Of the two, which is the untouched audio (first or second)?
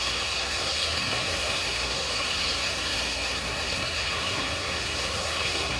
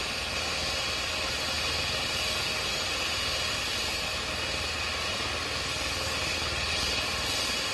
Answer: second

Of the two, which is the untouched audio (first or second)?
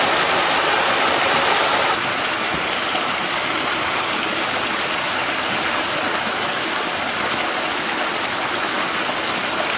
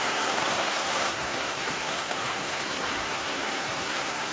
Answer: first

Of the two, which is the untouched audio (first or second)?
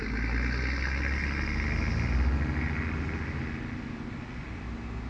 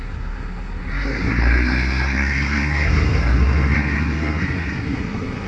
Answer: first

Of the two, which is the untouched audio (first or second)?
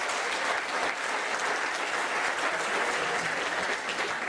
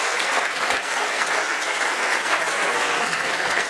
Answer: first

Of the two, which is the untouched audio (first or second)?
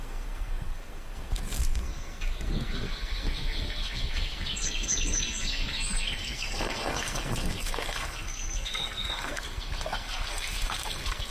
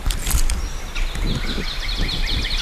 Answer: second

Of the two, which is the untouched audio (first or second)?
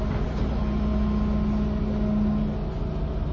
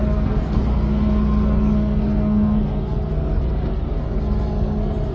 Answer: first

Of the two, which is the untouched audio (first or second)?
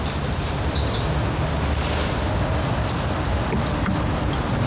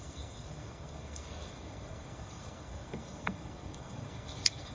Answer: first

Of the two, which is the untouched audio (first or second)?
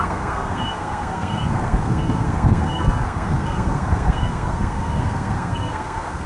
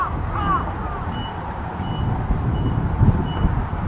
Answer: second